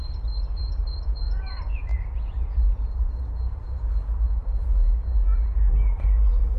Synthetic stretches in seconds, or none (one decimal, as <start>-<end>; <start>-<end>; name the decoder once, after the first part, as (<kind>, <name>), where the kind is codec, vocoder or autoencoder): 0.0-6.6 (vocoder, Vocos)